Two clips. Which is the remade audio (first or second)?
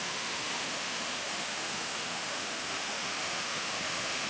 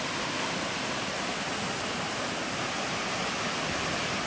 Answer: first